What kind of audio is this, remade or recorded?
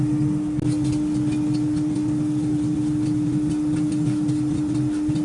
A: recorded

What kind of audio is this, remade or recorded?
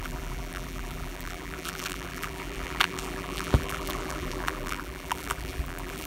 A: remade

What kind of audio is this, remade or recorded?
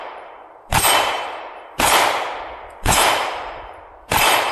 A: remade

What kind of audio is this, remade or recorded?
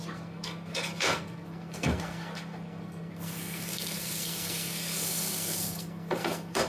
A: remade